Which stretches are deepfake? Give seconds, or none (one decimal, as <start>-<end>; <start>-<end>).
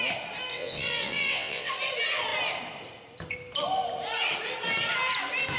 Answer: 0.5-1.7